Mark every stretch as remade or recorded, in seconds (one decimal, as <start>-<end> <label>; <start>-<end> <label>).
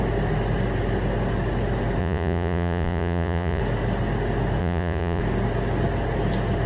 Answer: 0.0-2.0 recorded; 2.0-3.6 remade; 3.6-4.6 recorded; 4.6-5.2 remade; 5.2-6.7 recorded